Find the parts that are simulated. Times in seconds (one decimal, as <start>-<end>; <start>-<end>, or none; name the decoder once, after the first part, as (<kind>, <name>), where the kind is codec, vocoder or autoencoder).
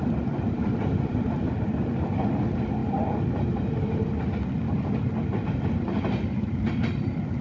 2.8-4.3 (vocoder, BigVGAN v2)